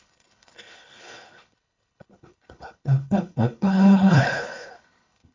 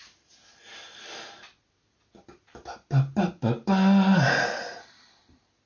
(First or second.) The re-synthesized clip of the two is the first